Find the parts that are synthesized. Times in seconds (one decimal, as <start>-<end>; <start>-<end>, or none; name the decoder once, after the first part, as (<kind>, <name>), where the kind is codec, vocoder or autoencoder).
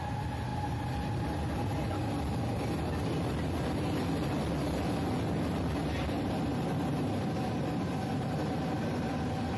none